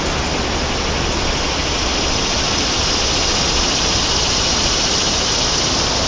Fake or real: real